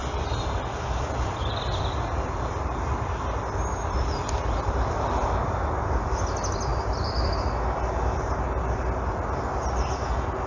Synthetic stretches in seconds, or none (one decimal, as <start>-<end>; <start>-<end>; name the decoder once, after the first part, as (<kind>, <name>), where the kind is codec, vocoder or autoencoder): 0.0-1.8 (vocoder, BigVGAN v2); 6.7-7.3